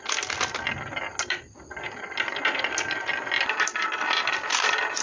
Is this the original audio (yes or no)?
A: yes